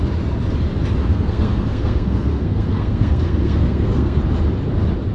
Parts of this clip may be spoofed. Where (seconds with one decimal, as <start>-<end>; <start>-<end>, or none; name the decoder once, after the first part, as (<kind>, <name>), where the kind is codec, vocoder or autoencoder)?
1.1-4.2 (codec, SNAC)